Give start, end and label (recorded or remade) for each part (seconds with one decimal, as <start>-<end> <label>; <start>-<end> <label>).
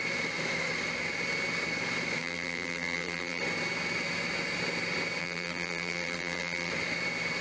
0.0-2.2 recorded; 2.2-3.4 remade; 3.4-5.2 recorded; 5.2-6.7 remade; 6.7-7.4 recorded